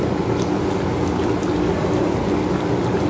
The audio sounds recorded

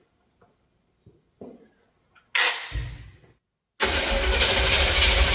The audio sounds recorded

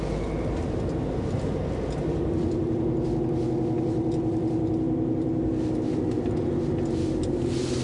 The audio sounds recorded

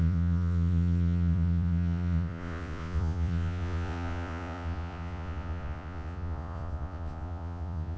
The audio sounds remade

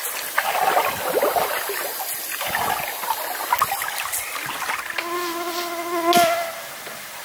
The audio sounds recorded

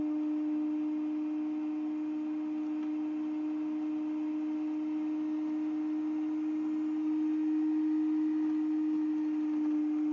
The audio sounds recorded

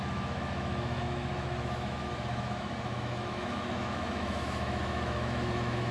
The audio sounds remade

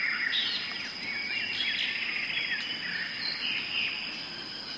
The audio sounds recorded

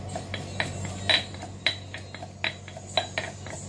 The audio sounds recorded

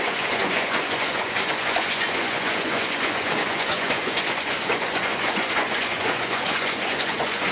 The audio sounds remade